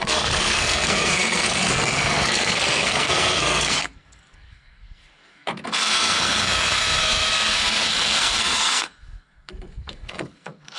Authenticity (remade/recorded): remade